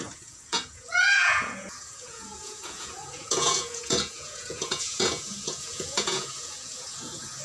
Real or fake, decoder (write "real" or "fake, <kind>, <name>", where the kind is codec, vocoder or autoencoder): fake, vocoder, Vocos